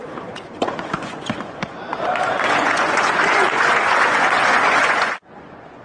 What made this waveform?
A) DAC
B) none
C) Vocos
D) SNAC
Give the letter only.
C